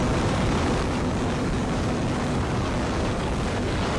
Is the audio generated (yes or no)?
yes